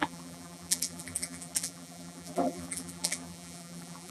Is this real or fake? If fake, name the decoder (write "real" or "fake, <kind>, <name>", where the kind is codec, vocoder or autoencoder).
fake, vocoder, BigVGAN v2